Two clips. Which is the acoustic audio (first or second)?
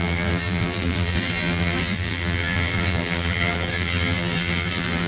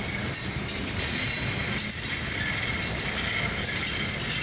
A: second